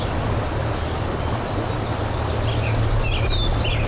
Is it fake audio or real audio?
real